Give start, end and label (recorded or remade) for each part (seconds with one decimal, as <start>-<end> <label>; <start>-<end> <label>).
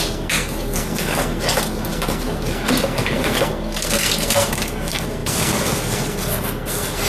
0.0-7.1 remade